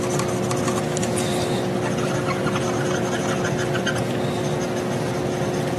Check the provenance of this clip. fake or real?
real